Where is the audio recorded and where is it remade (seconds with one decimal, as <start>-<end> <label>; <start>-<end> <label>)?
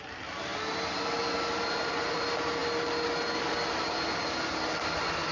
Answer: 0.0-5.3 recorded